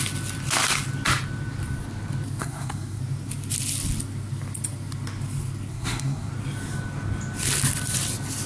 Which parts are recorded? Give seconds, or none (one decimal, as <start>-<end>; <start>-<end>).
0.0-2.4; 3.0-5.7; 6.3-8.5